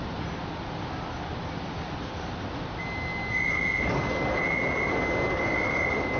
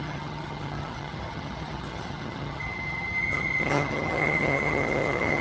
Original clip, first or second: first